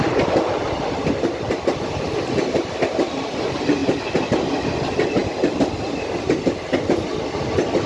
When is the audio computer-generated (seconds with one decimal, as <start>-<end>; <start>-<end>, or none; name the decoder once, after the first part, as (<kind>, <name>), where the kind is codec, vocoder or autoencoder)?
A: none